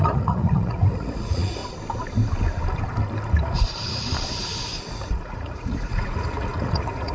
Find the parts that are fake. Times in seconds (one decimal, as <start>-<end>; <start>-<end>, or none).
0.0-1.6; 4.9-7.1